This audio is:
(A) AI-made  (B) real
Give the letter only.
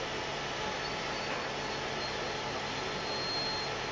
B